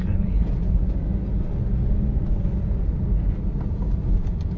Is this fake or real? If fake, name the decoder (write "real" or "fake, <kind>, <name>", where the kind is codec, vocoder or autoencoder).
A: real